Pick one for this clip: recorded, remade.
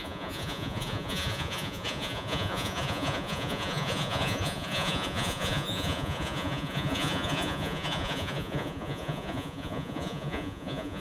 remade